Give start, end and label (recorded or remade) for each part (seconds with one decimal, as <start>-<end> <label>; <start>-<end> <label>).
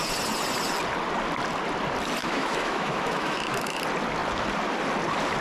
0.0-2.2 recorded; 2.2-3.8 remade; 3.8-5.4 recorded